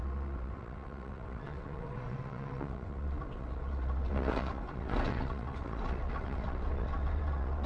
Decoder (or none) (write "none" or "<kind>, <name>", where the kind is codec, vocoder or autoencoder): vocoder, WaveNeXt